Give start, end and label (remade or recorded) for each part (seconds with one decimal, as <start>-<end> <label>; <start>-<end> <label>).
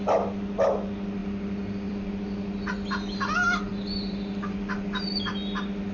0.0-5.9 recorded